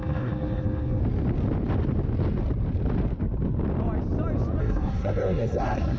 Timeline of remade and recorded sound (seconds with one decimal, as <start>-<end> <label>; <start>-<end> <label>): 0.0-1.0 remade; 1.0-4.6 recorded; 4.6-6.0 remade